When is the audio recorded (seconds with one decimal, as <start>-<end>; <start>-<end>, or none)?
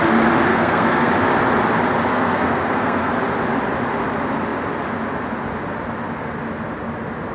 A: 0.0-0.5; 1.1-2.1; 3.1-7.3